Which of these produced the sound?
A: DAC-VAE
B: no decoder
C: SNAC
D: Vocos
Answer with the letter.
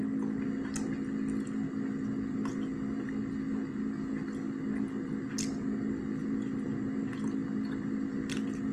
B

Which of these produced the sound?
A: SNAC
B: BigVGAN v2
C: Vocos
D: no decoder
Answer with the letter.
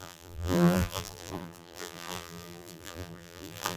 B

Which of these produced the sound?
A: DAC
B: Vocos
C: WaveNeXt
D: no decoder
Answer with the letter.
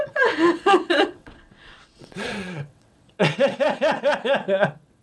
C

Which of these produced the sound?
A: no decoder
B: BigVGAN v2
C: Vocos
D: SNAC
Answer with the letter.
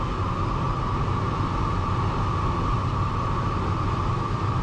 A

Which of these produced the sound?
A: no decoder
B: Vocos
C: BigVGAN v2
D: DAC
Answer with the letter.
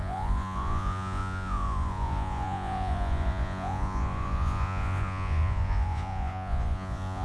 B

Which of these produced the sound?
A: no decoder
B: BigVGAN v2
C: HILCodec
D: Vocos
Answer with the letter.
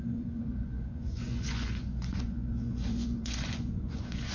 D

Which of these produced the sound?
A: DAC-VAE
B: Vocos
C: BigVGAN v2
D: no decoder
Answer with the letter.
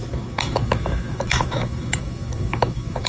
A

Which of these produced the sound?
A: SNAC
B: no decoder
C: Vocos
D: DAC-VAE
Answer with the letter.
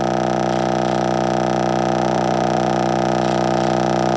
B